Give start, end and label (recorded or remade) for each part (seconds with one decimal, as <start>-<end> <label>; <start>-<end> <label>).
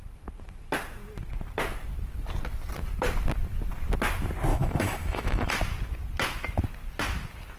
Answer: 0.0-4.5 recorded; 4.5-5.5 remade; 5.5-7.6 recorded